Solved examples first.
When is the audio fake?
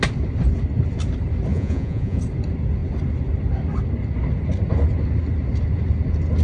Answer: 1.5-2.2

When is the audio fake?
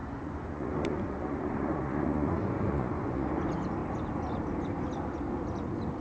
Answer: 0.0-3.3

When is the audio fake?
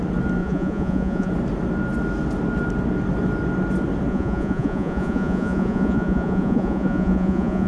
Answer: 0.4-1.3; 4.1-7.7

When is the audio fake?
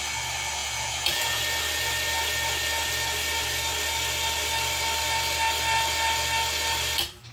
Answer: 0.6-1.4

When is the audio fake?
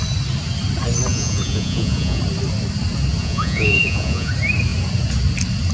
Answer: 1.1-2.2; 3.2-4.3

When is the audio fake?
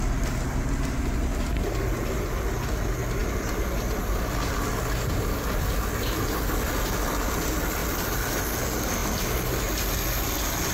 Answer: none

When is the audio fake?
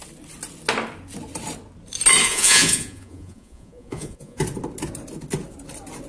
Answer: 2.2-4.4